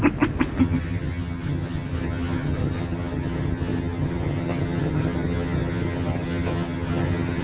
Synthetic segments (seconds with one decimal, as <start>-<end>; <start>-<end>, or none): 0.6-7.4